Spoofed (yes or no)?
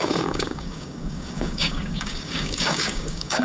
yes